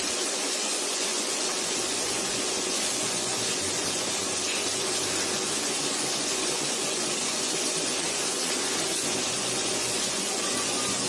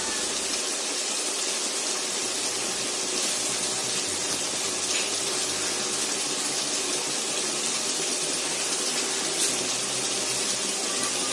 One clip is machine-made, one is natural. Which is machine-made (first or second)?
first